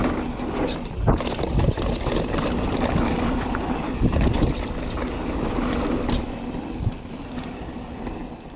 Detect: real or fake real